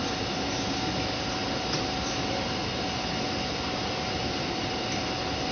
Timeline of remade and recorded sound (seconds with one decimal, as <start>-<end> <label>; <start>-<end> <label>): 0.0-5.5 recorded